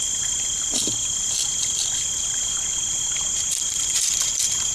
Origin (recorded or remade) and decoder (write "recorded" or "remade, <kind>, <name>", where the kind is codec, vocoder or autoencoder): recorded